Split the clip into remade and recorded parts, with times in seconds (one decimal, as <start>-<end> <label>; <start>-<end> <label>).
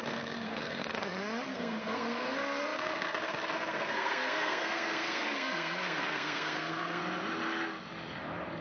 0.0-7.0 remade; 7.0-8.6 recorded